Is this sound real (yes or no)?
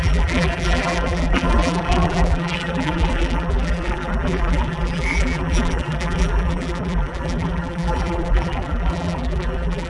no